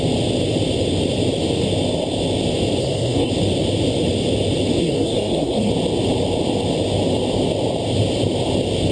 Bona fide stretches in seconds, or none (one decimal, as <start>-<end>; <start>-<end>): 0.0-2.8; 3.3-4.8; 5.7-8.9